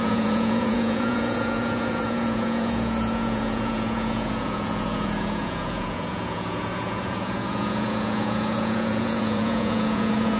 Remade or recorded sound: remade